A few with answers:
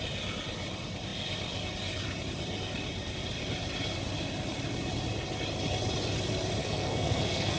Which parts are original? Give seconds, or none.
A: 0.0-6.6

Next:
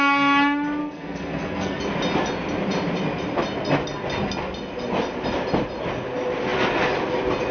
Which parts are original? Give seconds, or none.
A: 0.0-0.8; 1.8-7.5